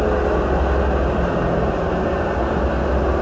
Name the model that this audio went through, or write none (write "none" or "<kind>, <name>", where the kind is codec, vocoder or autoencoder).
none